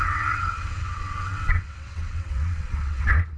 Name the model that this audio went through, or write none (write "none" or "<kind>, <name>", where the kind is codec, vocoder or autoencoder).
vocoder, WaveNeXt